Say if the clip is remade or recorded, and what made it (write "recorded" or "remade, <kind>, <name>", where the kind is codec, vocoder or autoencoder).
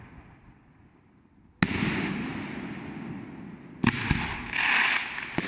recorded